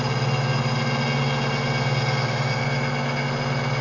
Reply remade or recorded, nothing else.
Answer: recorded